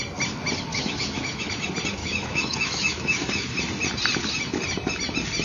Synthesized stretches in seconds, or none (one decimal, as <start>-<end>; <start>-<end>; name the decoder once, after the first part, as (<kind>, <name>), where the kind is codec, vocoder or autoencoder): 0.7-1.5 (autoencoder, DAC-VAE); 2.0-3.6